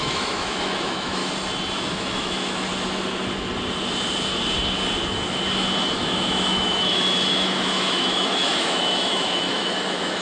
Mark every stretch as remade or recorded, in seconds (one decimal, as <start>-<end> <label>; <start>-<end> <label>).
0.0-1.2 remade; 1.2-1.9 recorded; 1.9-2.7 remade; 2.7-6.0 recorded; 6.0-10.2 remade